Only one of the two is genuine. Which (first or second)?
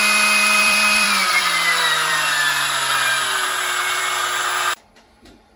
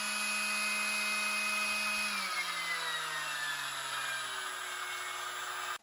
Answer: second